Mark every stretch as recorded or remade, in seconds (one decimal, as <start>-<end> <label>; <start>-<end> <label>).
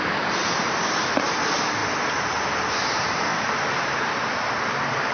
0.0-1.8 remade; 1.8-2.9 recorded; 2.9-5.1 remade